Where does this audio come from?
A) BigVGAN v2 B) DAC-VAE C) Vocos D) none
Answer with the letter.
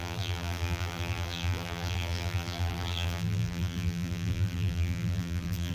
A